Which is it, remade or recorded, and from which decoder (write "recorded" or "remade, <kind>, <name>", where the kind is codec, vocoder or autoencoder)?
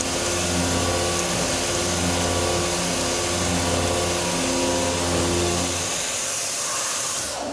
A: recorded